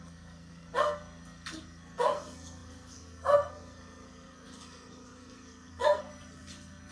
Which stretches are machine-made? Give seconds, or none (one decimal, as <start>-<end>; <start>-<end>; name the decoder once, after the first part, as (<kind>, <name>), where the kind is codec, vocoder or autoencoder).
0.0-6.9 (codec, SNAC)